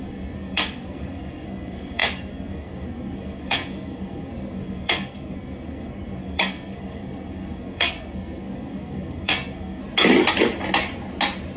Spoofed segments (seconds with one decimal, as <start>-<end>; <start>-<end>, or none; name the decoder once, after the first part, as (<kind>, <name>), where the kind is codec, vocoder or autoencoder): 0.0-9.8 (codec, SNAC)